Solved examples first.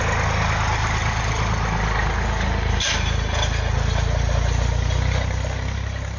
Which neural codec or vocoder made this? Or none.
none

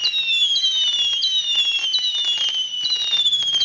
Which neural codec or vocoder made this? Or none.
none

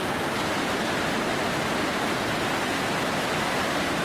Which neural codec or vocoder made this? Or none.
none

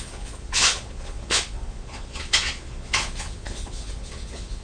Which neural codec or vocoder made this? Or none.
vocoder, Vocos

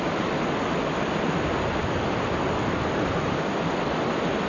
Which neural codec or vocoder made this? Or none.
none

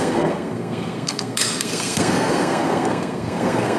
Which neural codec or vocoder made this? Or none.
codec, SNAC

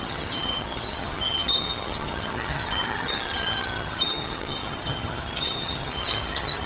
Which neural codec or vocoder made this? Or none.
vocoder, HiFi-GAN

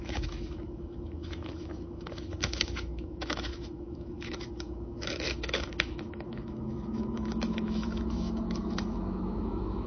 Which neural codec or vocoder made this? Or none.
autoencoder, DAC-VAE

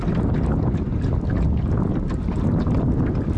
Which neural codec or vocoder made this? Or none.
none